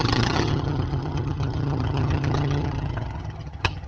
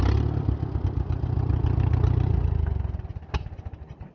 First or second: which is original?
second